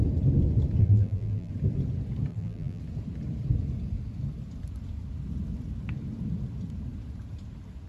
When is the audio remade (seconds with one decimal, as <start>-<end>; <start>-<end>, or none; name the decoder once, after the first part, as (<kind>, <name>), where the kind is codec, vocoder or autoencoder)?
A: 0.8-1.5 (vocoder, BigVGAN v2); 2.3-2.8